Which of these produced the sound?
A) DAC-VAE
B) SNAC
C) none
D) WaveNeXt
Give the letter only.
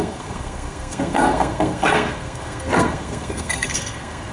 B